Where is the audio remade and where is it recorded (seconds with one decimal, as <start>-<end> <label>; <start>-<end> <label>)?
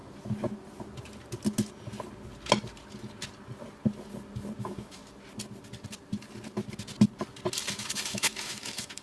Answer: 0.0-4.6 recorded; 4.6-5.0 remade; 5.0-7.7 recorded; 7.7-9.0 remade